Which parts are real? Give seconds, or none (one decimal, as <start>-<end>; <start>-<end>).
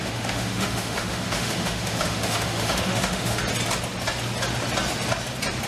3.4-5.7